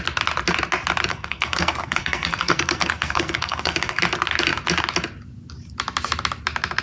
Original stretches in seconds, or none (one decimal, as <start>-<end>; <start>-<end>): 0.0-1.1; 4.0-6.8